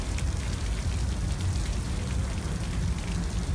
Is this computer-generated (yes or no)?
no